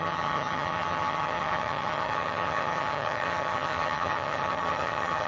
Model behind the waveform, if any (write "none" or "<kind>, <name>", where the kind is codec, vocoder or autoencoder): vocoder, HiFi-GAN